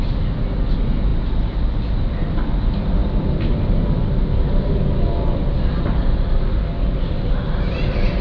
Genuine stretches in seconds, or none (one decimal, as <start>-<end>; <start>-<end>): 0.0-8.2